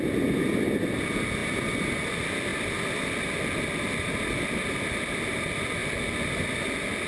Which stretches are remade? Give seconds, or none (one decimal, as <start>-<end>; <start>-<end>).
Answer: none